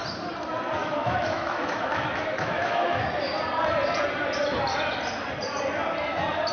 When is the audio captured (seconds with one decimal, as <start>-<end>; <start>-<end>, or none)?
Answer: 0.0-0.8; 3.1-6.5